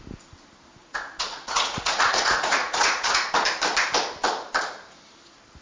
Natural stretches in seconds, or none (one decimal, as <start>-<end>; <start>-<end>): 0.0-0.8; 3.3-5.6